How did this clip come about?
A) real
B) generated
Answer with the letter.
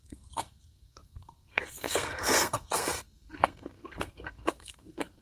B